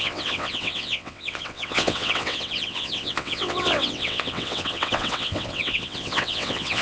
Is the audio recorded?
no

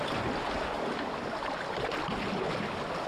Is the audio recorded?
yes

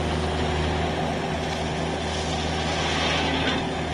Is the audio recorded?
yes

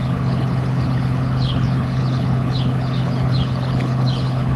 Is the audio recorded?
no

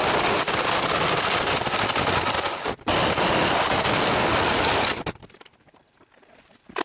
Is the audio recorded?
yes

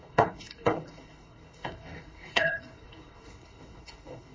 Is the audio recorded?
no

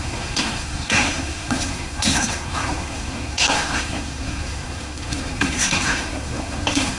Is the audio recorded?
no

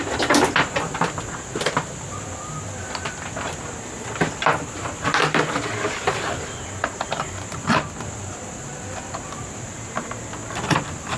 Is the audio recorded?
no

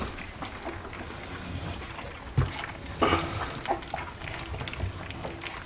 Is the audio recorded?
yes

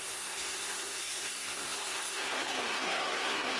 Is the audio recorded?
no